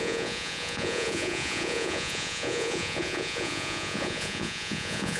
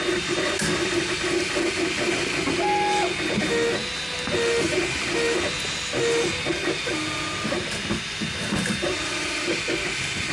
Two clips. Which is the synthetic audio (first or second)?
first